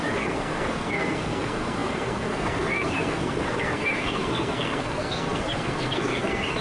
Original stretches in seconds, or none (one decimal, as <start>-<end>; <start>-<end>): none